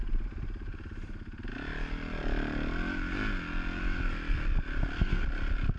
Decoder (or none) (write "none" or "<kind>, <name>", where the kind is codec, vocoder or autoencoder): none